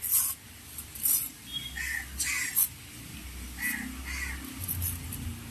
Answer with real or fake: real